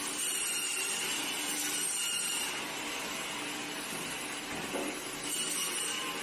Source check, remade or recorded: recorded